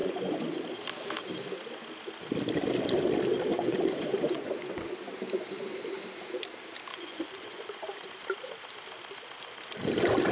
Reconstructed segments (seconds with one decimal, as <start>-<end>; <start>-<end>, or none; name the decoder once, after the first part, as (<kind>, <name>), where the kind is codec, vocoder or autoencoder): 0.0-0.6 (vocoder, Vocos); 3.5-4.8; 6.9-8.1